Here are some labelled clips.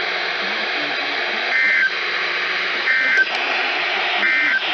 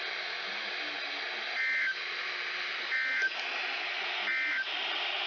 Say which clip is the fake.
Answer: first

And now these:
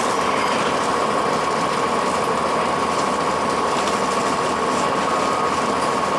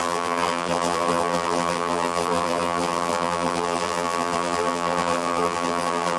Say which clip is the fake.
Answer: second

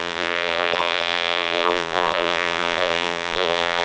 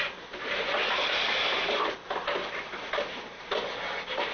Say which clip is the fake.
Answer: first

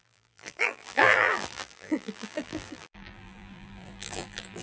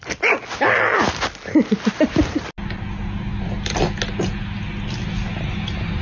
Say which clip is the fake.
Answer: first